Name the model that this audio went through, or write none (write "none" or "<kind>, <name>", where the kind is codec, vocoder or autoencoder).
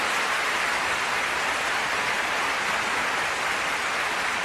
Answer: vocoder, BigVGAN v2